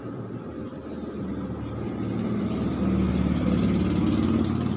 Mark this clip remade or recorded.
recorded